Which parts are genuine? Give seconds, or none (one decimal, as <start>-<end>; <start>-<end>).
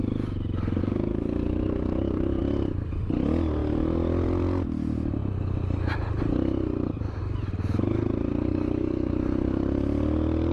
0.0-0.8; 2.4-8.5; 9.1-10.5